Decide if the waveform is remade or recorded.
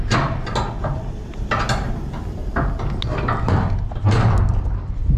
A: recorded